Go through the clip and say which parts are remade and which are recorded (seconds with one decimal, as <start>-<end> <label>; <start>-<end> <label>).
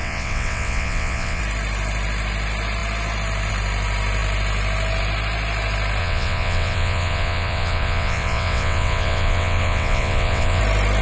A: 0.0-1.4 remade; 1.4-6.0 recorded; 6.0-10.6 remade; 10.6-11.0 recorded